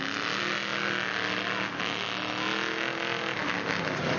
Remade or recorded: recorded